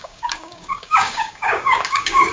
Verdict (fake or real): fake